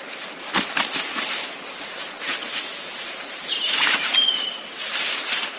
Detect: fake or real fake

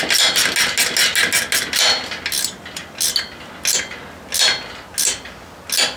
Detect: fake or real real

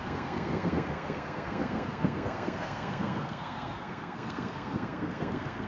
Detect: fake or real fake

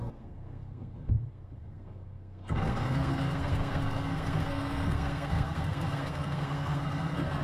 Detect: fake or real fake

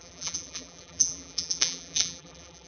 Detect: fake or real fake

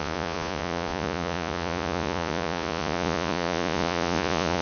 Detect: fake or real fake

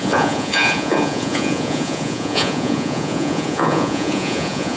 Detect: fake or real fake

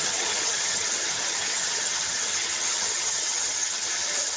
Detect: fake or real fake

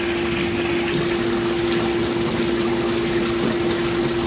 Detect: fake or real real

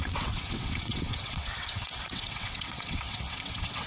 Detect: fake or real fake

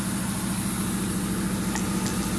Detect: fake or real real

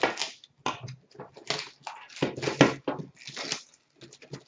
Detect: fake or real real